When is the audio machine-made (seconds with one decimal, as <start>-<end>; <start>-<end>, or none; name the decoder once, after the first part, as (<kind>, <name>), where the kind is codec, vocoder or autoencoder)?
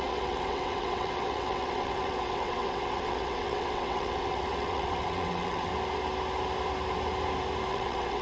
0.0-5.7 (vocoder, WaveNeXt); 7.7-8.2